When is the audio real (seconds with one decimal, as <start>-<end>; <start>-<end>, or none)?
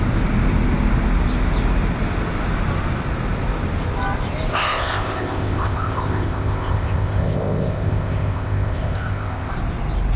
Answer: 0.0-4.5; 9.5-10.2